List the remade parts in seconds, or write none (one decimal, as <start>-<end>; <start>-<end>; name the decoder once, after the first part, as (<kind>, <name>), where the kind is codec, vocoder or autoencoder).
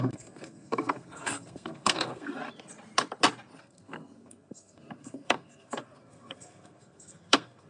0.0-2.4 (codec, SNAC); 3.6-7.7